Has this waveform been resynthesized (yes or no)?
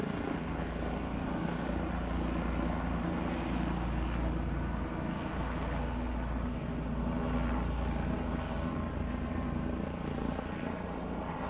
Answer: no